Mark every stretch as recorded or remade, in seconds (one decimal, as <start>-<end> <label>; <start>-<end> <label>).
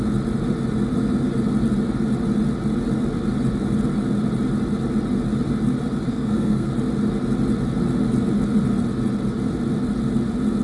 0.0-6.1 recorded; 6.1-6.7 remade; 6.7-10.6 recorded